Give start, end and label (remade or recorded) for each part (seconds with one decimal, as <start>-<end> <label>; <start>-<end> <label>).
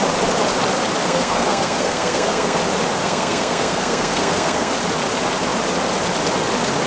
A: 0.0-1.0 recorded; 1.0-2.6 remade; 2.6-3.0 recorded; 3.0-4.7 remade; 4.7-6.9 recorded